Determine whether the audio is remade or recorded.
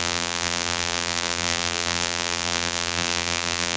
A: remade